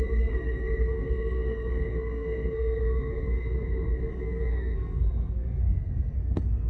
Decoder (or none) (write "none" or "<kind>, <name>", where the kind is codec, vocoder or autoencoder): codec, SNAC